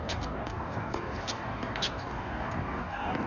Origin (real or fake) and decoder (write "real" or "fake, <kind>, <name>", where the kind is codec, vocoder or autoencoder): fake, codec, DAC